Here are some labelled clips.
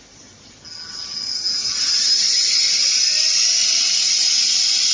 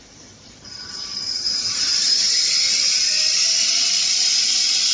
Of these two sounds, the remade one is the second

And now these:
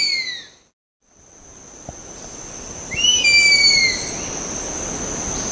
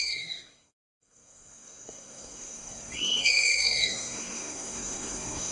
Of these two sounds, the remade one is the second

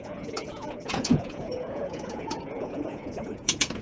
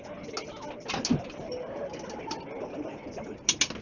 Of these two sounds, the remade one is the first